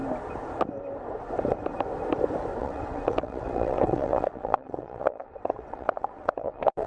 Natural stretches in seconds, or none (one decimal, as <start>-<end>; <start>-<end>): 0.0-2.6